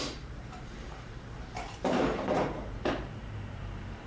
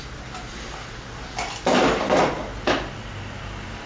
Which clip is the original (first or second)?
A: second